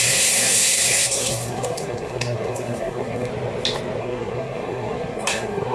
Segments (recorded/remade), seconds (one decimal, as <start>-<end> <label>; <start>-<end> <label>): 0.0-3.3 remade; 3.3-4.0 recorded; 4.0-5.7 remade